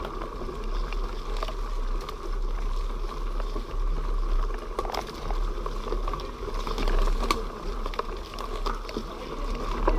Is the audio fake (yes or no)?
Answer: no